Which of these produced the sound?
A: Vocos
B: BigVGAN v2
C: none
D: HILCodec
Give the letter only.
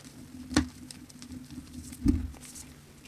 B